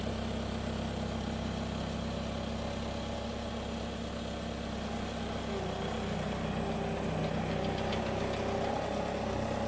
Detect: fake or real real